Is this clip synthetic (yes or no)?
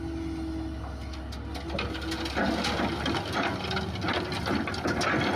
no